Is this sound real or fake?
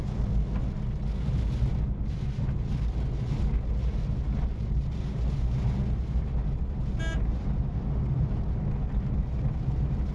real